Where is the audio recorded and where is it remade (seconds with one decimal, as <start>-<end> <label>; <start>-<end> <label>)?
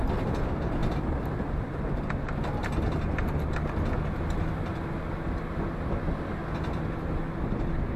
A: 0.0-8.0 recorded